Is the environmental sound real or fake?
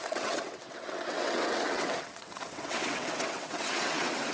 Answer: fake